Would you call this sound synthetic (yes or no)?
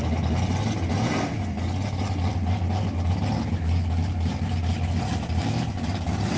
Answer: no